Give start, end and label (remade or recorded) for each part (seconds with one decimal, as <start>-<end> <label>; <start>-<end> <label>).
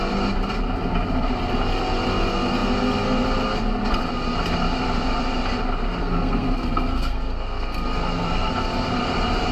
0.0-6.0 recorded; 6.0-8.5 remade; 8.5-9.5 recorded